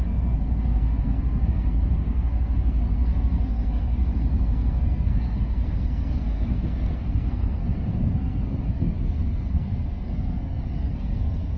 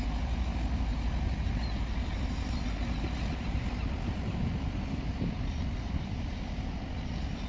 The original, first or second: second